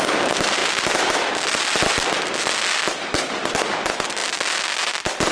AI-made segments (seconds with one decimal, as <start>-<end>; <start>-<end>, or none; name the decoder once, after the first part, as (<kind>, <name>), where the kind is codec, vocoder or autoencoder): none